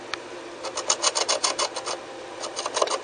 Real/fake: real